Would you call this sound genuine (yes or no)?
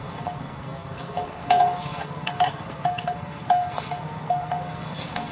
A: no